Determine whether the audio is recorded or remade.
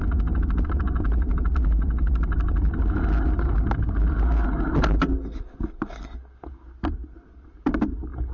recorded